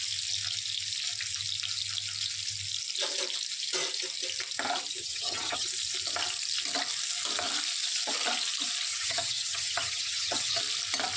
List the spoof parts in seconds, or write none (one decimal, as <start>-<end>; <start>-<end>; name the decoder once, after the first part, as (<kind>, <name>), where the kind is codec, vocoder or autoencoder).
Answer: 5.0-5.7 (vocoder, HiFi-GAN); 8.9-10.6